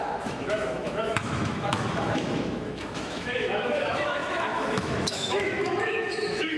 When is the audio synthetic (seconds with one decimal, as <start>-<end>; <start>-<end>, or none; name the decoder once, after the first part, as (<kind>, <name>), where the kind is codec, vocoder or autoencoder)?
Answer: 0.0-6.6 (autoencoder, DAC-VAE)